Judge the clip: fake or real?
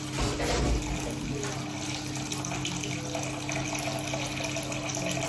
real